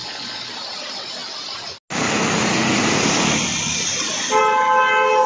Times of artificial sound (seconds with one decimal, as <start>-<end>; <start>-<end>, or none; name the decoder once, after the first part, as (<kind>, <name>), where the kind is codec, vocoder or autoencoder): 0.0-0.5 (codec, HILCodec)